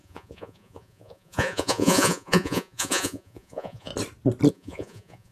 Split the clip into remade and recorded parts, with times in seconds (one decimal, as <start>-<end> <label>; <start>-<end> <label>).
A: 0.0-3.9 remade; 3.9-4.5 recorded; 4.5-5.3 remade